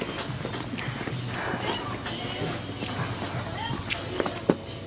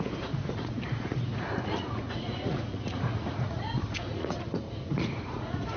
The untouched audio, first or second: first